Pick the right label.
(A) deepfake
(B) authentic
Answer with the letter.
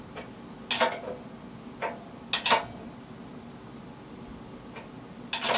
B